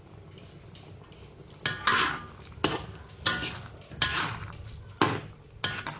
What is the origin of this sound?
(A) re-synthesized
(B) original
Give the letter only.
B